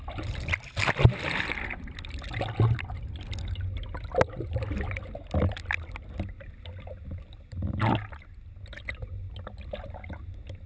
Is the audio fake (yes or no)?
no